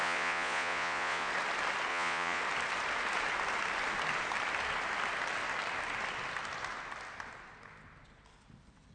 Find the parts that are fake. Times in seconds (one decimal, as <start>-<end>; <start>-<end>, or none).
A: 0.0-1.3; 1.9-2.4